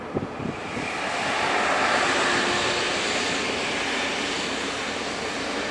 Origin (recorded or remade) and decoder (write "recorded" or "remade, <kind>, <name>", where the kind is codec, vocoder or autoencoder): recorded